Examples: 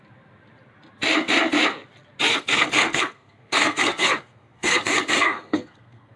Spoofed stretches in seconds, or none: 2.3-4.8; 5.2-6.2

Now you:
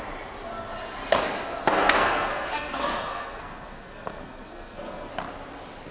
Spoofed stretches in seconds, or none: 1.6-5.1